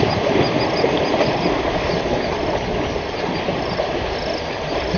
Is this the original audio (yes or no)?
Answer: yes